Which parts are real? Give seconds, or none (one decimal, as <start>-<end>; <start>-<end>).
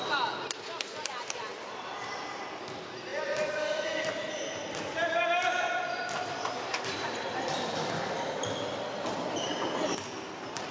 0.0-1.5; 2.7-3.1; 6.0-10.7